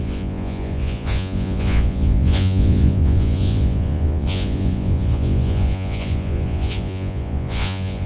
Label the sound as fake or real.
fake